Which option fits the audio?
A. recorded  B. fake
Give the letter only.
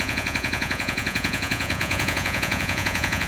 B